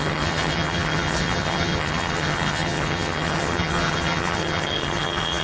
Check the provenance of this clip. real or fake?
fake